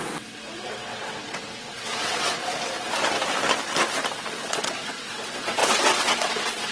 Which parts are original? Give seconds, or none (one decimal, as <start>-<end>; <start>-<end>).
2.4-4.5